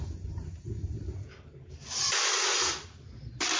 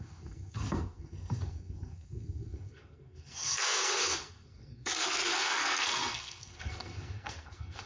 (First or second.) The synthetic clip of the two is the second